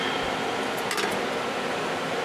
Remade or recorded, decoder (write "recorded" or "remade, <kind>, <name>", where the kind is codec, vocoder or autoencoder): recorded